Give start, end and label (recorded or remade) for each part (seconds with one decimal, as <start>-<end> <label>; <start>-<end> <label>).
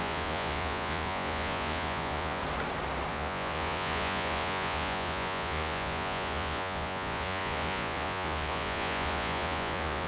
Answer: 0.0-2.4 remade; 2.4-3.1 recorded; 3.1-10.1 remade